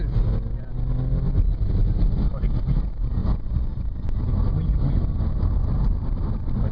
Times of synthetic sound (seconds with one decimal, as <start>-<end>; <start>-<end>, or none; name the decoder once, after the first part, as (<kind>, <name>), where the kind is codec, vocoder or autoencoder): none